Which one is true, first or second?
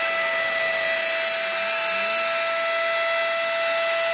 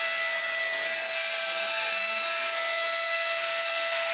first